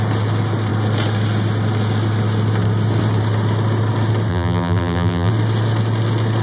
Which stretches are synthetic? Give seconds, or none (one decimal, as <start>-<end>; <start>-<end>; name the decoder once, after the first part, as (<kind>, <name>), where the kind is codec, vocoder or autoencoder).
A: 4.3-5.3 (vocoder, BigVGAN v2)

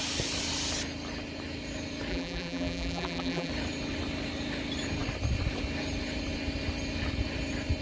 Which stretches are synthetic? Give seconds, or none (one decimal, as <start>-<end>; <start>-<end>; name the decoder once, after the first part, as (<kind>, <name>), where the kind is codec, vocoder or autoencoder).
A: 2.1-3.5 (vocoder, BigVGAN v2)

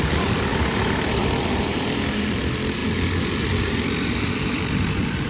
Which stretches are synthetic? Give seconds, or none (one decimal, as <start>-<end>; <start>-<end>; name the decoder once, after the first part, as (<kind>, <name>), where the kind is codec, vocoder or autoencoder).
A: 0.0-2.8 (vocoder, BigVGAN v2); 3.6-5.3

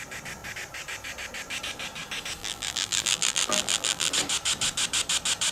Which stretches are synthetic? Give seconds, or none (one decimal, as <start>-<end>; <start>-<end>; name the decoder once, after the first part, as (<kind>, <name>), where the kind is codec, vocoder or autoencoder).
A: 2.4-4.1 (vocoder, BigVGAN v2)

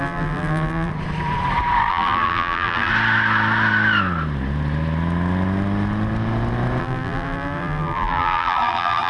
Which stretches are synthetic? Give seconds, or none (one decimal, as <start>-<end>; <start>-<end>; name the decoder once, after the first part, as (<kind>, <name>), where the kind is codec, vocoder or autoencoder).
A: 0.0-0.9 (vocoder, BigVGAN v2); 1.9-2.9; 6.8-9.1